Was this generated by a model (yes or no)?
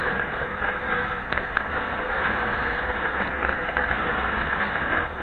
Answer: yes